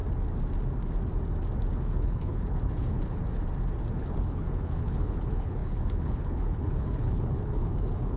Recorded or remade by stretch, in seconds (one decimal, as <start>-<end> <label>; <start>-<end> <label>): 0.0-1.7 recorded; 1.7-3.2 remade; 3.2-4.0 recorded; 4.0-8.2 remade